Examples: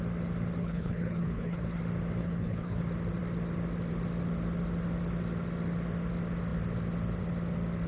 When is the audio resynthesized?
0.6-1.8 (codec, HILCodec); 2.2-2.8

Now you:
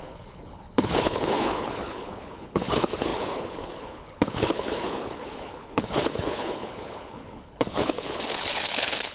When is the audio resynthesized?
0.0-9.1 (codec, HILCodec)